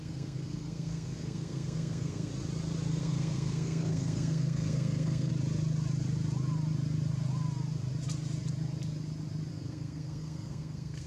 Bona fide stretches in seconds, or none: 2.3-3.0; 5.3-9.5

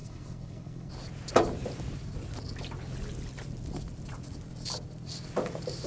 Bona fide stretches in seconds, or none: 0.9-5.9

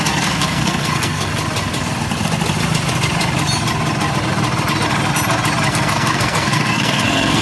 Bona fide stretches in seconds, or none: 1.3-5.7